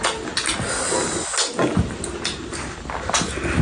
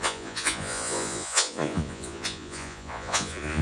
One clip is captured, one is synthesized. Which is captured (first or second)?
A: first